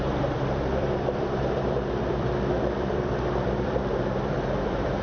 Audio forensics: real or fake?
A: fake